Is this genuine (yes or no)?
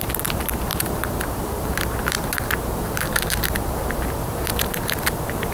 no